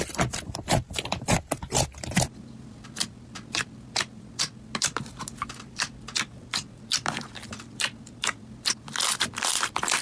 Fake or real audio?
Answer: fake